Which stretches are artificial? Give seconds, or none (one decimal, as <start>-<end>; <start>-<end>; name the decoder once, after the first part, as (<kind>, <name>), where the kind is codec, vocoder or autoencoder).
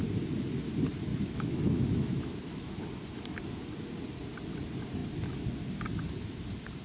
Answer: 1.1-2.8 (autoencoder, DAC-VAE)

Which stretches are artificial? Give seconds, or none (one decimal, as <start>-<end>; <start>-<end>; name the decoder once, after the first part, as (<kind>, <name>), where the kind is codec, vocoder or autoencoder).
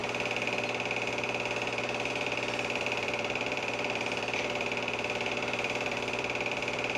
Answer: 2.1-7.0 (vocoder, BigVGAN v2)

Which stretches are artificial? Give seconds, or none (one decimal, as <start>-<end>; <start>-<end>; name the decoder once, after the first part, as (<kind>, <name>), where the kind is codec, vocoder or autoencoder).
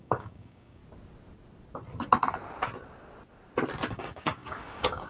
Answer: 0.0-0.8 (codec, DAC); 3.9-5.1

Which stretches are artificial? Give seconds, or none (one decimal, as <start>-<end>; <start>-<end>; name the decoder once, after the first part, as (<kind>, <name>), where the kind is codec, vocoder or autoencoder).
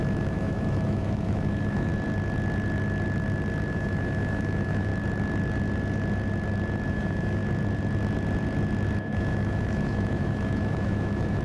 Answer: 0.0-1.9 (autoencoder, DAC-VAE); 3.7-4.9; 6.9-7.4; 9.1-11.4